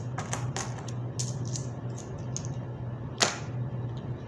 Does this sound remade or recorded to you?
recorded